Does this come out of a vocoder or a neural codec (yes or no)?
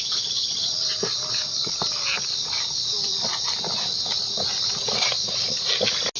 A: no